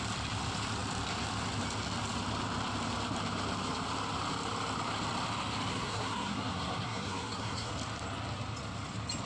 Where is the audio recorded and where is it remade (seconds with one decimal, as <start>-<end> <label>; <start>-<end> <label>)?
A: 0.0-5.7 recorded; 5.7-7.7 remade; 7.7-9.3 recorded